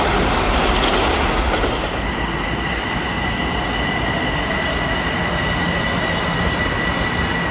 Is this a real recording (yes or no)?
yes